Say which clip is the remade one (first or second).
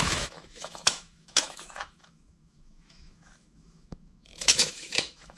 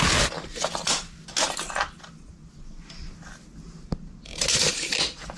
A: first